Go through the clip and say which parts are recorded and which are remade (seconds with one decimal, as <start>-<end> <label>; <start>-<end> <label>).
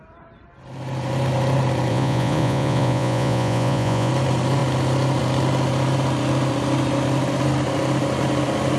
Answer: 0.0-1.9 recorded; 1.9-4.1 remade; 4.1-8.8 recorded